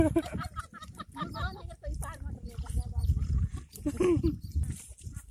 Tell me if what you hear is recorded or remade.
recorded